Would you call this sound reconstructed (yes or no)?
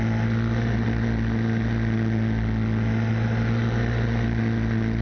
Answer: no